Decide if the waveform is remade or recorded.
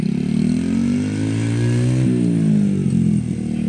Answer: recorded